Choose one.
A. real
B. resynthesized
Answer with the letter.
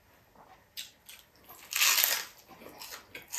A